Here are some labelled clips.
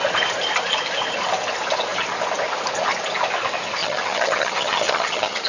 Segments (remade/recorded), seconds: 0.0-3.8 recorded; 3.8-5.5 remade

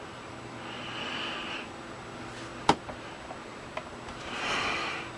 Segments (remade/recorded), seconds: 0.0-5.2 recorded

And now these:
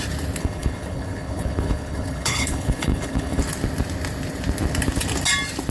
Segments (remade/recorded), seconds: 0.0-0.4 recorded; 0.4-3.4 remade; 3.4-5.7 recorded

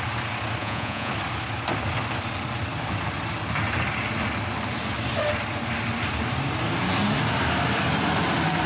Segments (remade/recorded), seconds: 0.0-0.6 recorded; 0.6-1.1 remade; 1.1-8.7 recorded